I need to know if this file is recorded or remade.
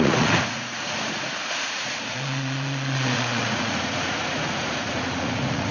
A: remade